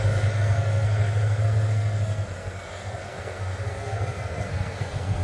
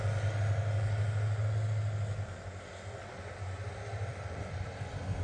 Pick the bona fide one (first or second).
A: second